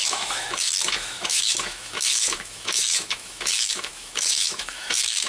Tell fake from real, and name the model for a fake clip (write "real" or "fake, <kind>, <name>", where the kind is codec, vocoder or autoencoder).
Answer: fake, autoencoder, DAC-VAE